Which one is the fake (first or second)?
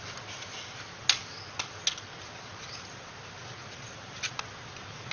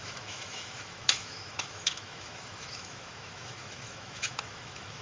second